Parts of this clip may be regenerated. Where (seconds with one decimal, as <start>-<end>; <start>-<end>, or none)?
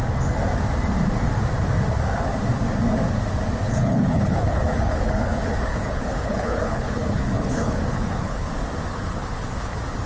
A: 3.7-8.5; 8.9-9.7